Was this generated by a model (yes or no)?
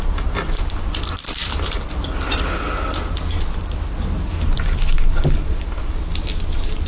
no